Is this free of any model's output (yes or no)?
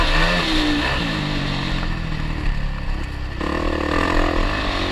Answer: yes